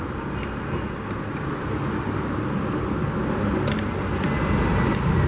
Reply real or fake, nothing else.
real